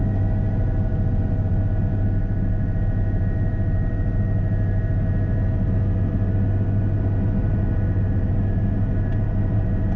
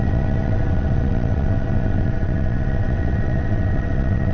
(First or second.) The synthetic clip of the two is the second